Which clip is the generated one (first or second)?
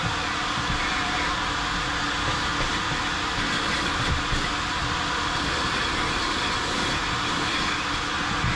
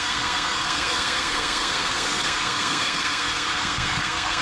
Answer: second